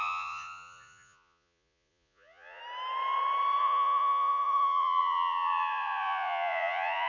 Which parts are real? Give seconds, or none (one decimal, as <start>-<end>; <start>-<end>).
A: 2.6-3.6